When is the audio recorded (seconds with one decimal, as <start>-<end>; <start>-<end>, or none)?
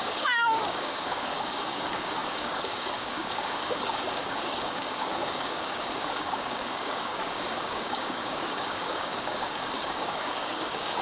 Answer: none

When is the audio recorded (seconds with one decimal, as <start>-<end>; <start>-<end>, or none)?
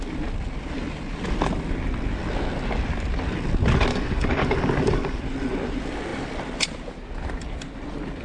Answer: 0.0-3.9; 5.2-8.2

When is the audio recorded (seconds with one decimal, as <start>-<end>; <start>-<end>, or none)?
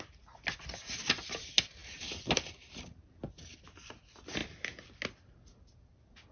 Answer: 0.0-6.3